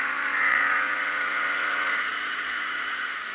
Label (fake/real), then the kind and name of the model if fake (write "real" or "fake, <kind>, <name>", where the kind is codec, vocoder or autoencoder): fake, vocoder, Vocos